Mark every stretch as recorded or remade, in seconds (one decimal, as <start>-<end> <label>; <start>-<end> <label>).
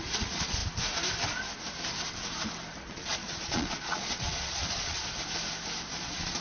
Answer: 0.0-0.6 remade; 0.6-2.9 recorded; 2.9-5.0 remade; 5.0-5.9 recorded; 5.9-6.4 remade